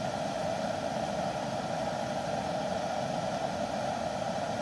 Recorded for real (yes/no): no